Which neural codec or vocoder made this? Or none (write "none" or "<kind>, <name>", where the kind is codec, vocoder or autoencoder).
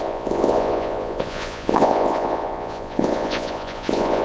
vocoder, Vocos